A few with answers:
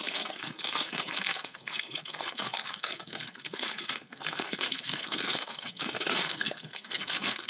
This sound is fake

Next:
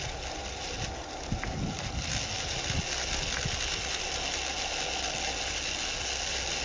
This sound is real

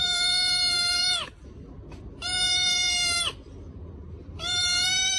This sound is fake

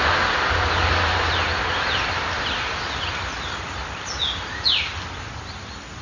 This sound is real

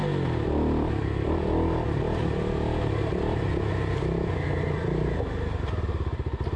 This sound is real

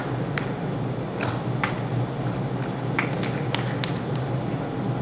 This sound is real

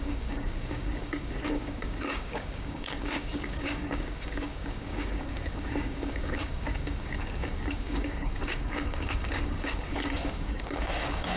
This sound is fake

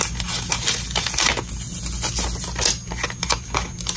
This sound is real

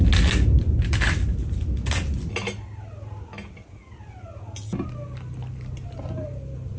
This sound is real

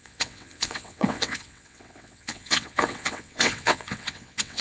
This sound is fake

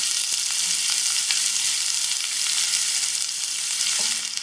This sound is real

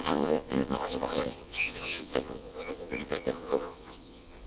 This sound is fake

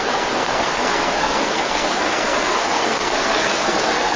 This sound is fake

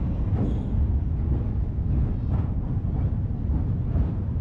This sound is real